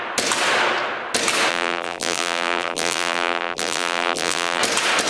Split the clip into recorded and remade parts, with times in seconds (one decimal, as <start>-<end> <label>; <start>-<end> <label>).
0.0-1.5 recorded; 1.5-4.6 remade; 4.6-5.1 recorded